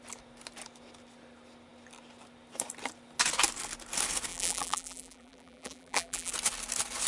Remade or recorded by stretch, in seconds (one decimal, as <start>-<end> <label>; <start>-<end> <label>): 0.0-4.3 recorded; 4.3-6.3 remade; 6.3-7.1 recorded